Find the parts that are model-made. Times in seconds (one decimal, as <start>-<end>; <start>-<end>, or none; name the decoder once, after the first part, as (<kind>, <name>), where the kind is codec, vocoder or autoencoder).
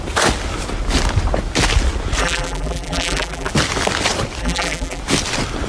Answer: 2.2-3.5 (vocoder, BigVGAN v2); 4.4-5.0